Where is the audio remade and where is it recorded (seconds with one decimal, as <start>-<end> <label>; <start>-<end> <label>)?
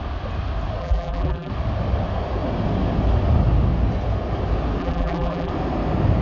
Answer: 0.0-0.8 recorded; 0.8-1.5 remade; 1.5-4.8 recorded; 4.8-5.5 remade; 5.5-6.2 recorded